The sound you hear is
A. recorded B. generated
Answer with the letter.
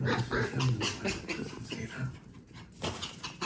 A